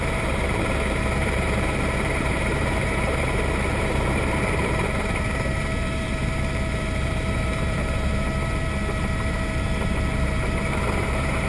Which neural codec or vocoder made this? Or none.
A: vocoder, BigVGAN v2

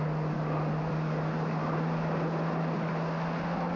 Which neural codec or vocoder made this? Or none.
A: none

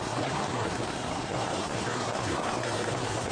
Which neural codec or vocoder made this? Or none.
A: codec, SNAC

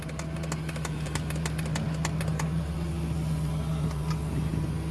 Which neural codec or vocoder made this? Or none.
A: none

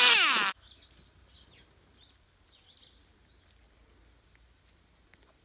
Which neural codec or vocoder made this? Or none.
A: none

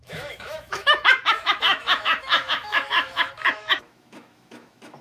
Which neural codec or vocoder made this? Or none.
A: autoencoder, DAC-VAE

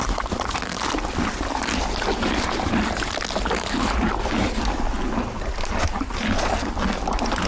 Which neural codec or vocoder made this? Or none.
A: none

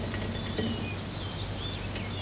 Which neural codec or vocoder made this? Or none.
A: none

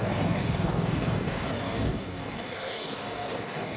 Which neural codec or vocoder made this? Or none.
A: codec, DAC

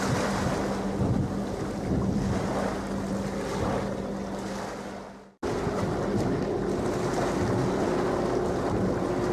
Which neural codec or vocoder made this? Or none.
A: none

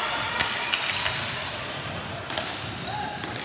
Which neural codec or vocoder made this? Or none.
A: vocoder, BigVGAN v2